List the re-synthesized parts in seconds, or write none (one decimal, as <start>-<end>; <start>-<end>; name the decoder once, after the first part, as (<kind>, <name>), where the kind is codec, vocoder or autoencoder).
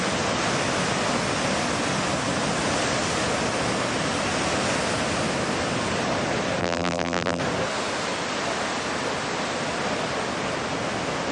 6.6-7.4 (vocoder, BigVGAN v2)